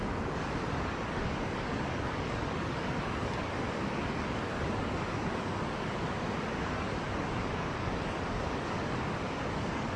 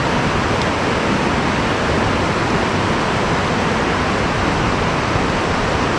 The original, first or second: second